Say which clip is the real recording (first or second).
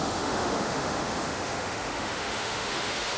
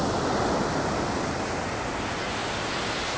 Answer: second